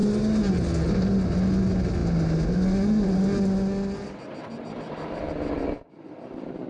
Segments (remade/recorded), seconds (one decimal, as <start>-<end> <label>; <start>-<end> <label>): 0.0-6.7 recorded